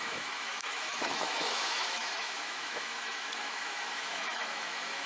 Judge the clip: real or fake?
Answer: fake